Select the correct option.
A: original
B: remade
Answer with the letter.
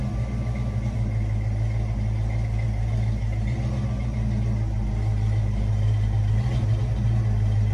A